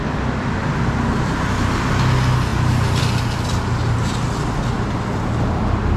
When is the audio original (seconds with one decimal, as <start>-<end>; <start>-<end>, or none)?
0.0-6.0